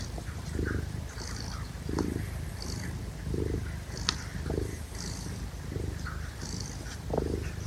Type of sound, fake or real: real